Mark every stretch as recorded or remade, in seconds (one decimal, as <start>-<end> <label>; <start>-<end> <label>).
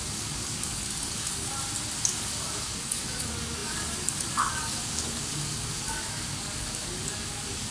0.0-1.5 remade; 1.5-2.1 recorded; 2.1-7.7 remade